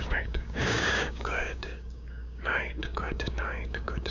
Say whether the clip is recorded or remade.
remade